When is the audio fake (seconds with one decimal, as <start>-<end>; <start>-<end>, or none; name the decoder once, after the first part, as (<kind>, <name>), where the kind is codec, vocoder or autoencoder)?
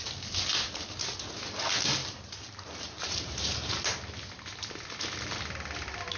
2.0-3.7 (vocoder, BigVGAN v2)